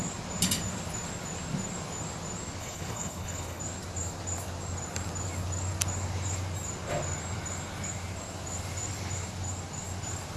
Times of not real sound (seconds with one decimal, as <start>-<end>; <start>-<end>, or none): 2.6-3.6